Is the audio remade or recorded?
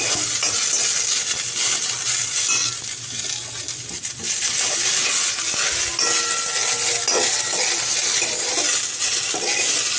recorded